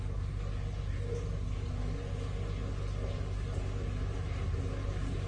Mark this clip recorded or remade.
recorded